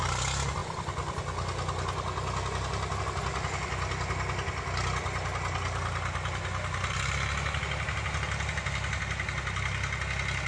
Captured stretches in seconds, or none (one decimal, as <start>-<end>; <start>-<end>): 0.0-10.5